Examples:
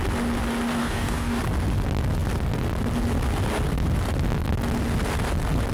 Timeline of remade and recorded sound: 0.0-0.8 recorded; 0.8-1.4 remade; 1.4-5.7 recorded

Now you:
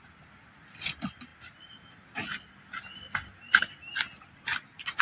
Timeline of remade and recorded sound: 0.0-5.0 recorded

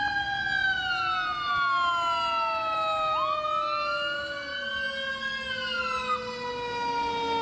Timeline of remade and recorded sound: 0.0-7.4 recorded

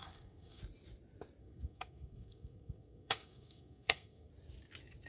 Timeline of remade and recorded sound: 0.0-0.6 remade; 0.6-1.4 recorded; 1.4-4.3 remade; 4.3-5.1 recorded

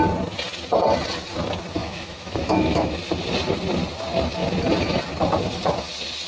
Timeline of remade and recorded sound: 0.0-1.8 recorded; 1.8-3.0 remade; 3.0-6.3 recorded